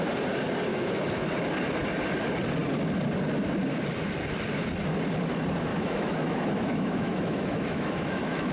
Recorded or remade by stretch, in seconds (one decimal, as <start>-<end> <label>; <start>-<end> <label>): 0.0-0.7 recorded; 0.7-1.3 remade; 1.3-5.7 recorded; 5.7-8.5 remade